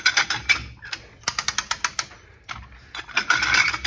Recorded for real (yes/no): yes